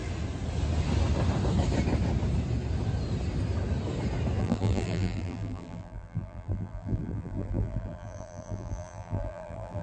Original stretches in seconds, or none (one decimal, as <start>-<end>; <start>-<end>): 0.0-4.4